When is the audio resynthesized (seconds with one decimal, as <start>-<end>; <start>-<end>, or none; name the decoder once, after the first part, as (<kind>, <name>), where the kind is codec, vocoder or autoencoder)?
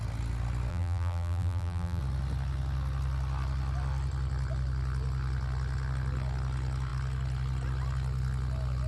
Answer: 0.7-2.0 (vocoder, BigVGAN v2)